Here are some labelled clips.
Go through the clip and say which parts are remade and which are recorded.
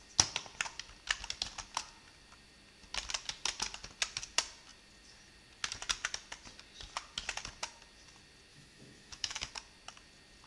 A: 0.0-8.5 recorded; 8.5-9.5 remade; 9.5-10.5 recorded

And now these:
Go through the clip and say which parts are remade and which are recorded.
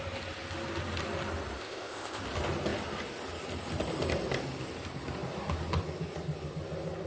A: 0.0-1.6 recorded; 1.6-2.2 remade; 2.2-7.1 recorded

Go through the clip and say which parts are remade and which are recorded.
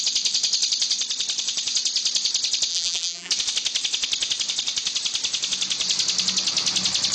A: 0.0-2.7 recorded; 2.7-3.3 remade; 3.3-7.1 recorded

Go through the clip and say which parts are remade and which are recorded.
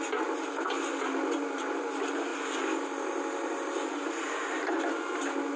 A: 0.0-5.6 recorded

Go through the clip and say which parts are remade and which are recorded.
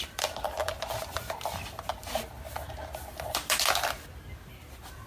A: 0.0-0.8 remade; 0.8-5.1 recorded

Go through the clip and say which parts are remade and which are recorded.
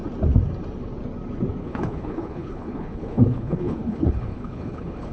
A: 0.0-1.6 recorded; 1.6-5.1 remade